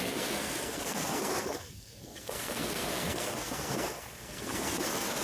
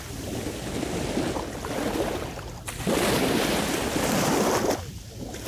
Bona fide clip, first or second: second